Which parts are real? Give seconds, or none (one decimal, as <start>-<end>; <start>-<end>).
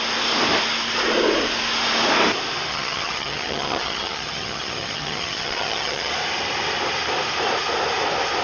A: 0.0-2.7; 6.1-8.4